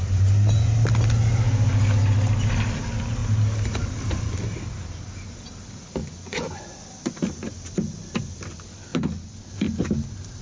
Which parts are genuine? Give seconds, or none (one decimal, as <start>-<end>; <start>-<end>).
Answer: 0.0-6.0; 6.8-10.4